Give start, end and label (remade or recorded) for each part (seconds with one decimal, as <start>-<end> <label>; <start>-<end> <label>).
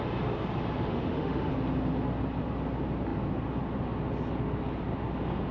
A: 0.0-0.9 recorded; 0.9-1.5 remade; 1.5-5.5 recorded